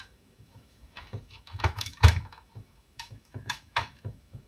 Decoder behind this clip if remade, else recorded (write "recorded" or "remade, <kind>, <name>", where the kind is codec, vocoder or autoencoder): remade, autoencoder, DAC-VAE